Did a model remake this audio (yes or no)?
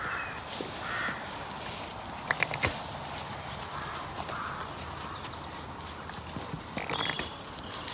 no